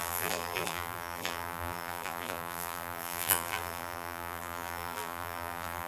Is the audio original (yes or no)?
no